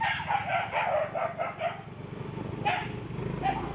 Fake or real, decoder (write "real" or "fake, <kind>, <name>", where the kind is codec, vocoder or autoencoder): real